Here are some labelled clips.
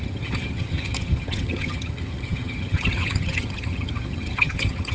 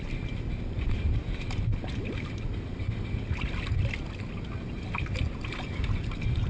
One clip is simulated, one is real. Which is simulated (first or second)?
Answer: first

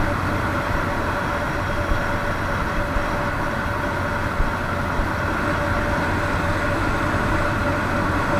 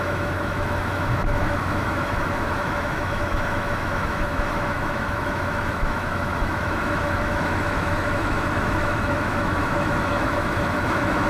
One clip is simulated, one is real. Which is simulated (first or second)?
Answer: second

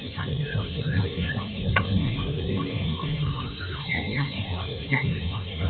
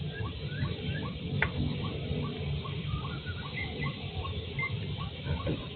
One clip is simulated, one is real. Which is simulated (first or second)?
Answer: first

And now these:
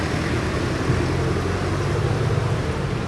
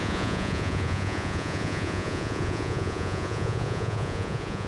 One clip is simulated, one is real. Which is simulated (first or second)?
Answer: second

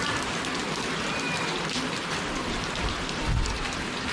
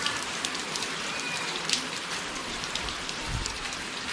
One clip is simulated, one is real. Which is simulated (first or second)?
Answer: second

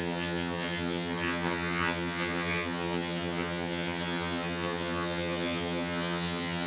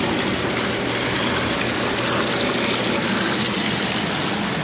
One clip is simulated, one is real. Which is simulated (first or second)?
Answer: first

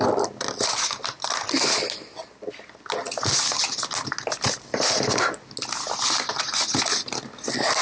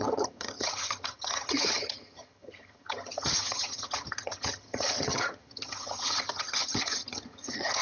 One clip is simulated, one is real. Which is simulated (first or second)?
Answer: second